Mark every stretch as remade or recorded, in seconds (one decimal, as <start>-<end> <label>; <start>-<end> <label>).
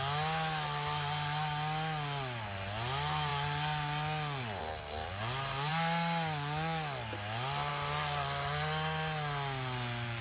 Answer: 0.0-10.2 recorded